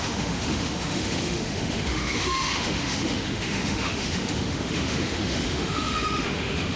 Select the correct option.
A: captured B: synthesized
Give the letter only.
B